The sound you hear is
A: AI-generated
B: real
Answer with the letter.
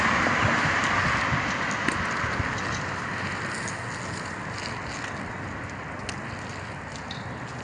B